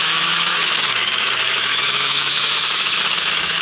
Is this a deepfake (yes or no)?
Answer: yes